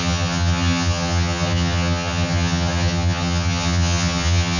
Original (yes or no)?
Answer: no